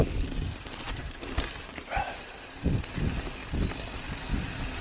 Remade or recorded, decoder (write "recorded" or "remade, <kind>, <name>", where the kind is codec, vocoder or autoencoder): recorded